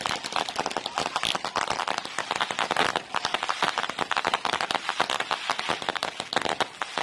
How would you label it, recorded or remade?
recorded